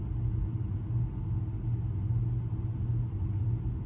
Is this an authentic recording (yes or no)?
yes